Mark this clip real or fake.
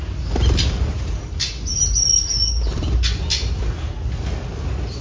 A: real